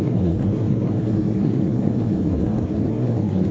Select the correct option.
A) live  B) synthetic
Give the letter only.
B